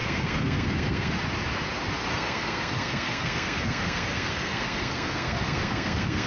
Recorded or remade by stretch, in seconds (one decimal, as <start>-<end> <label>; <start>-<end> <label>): 0.0-1.1 remade; 1.1-2.1 recorded; 2.1-6.3 remade